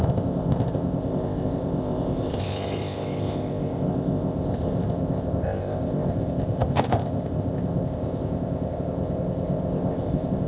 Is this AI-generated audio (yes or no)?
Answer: yes